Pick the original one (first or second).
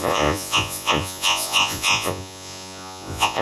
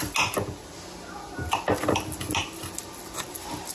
second